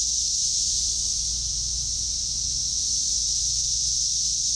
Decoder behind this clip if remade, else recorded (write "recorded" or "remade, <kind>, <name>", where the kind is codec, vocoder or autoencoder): recorded